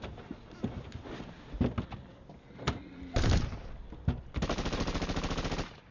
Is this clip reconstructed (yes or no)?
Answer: no